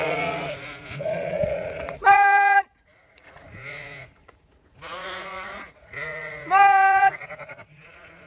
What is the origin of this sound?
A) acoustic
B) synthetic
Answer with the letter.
B